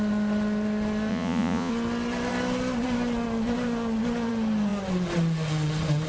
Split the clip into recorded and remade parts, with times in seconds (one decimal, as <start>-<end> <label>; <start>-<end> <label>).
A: 0.0-1.1 recorded; 1.1-1.7 remade; 1.7-6.1 recorded

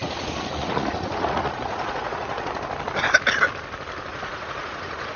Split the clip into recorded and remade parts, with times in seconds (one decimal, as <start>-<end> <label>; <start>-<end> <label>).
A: 0.0-2.6 remade; 2.6-4.1 recorded; 4.1-5.2 remade